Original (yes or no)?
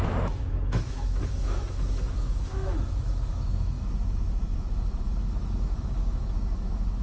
no